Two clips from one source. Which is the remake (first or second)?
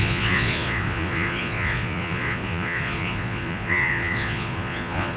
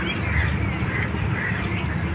first